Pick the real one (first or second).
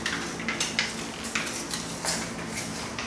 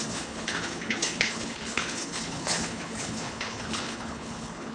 first